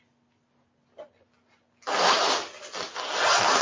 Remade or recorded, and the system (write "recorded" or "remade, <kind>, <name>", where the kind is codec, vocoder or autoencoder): recorded